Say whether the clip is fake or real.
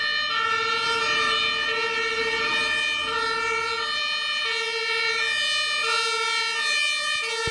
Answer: real